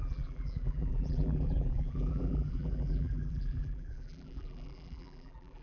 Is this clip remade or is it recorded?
remade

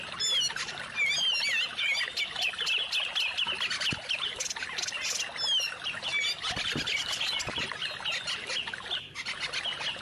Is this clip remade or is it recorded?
recorded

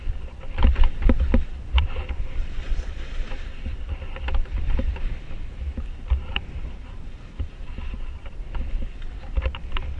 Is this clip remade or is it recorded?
remade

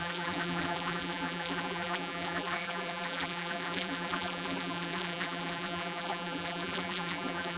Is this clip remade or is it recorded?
remade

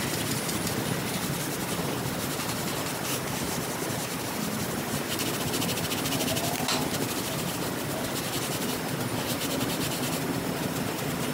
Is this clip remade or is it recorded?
recorded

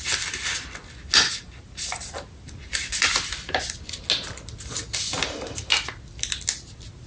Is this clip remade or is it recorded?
recorded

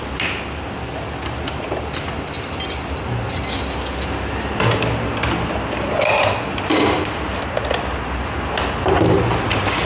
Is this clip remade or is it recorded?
recorded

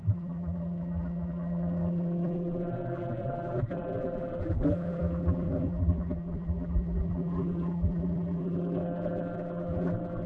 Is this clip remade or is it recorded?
remade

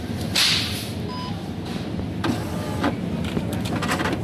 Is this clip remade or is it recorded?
recorded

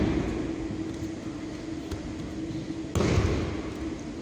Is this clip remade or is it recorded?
recorded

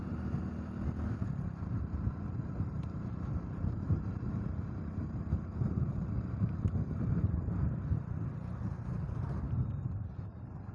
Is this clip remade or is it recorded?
remade